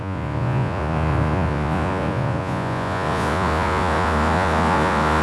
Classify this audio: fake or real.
fake